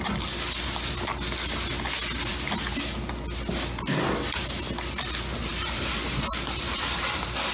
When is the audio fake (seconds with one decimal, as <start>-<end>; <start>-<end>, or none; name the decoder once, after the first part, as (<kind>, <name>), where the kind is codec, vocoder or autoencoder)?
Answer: 5.5-7.5 (vocoder, BigVGAN v2)